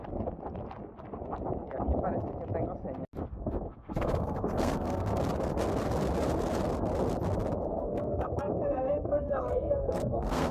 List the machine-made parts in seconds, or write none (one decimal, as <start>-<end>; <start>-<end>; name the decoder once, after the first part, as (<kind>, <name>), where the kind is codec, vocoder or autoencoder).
3.3-5.2 (codec, SNAC); 7.8-10.5